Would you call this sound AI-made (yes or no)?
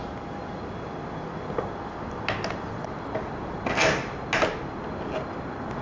no